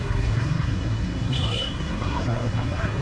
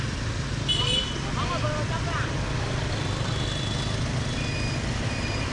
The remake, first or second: first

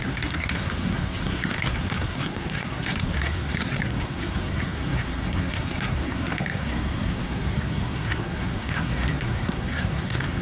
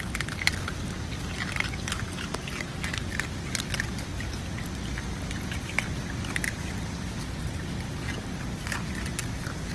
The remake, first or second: first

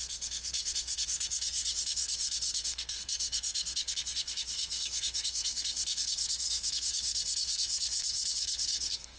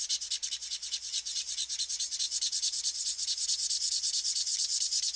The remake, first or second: first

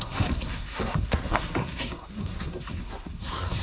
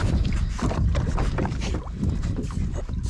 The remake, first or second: first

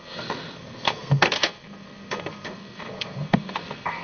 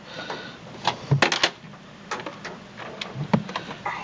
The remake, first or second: first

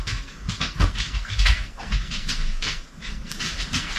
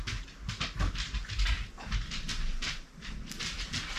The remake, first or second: first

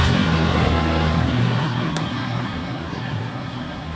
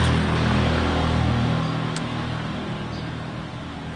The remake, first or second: first